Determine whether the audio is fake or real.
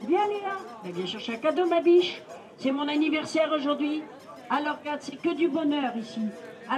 fake